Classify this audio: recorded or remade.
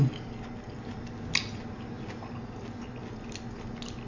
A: recorded